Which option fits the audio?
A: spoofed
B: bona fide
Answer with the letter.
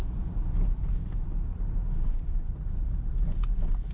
B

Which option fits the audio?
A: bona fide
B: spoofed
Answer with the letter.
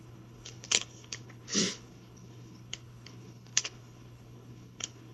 B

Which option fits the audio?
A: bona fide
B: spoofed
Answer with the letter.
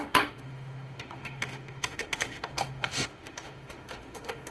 B